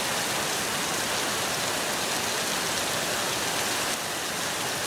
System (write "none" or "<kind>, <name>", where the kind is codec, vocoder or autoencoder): none